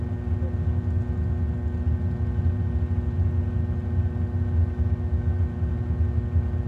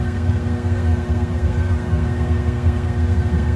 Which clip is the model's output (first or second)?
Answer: second